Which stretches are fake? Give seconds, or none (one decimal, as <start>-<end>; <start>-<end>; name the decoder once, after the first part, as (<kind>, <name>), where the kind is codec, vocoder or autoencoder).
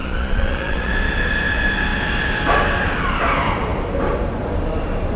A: 0.0-0.9 (vocoder, Vocos)